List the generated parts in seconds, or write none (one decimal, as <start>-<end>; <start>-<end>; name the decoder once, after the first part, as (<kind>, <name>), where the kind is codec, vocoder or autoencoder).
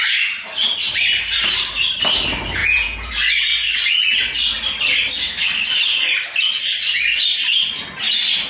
2.6-3.1 (vocoder, Vocos)